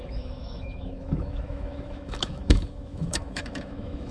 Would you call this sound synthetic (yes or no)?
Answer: yes